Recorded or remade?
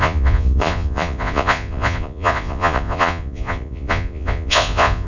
remade